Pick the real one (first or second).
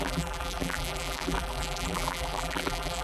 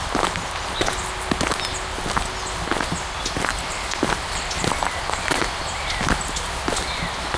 second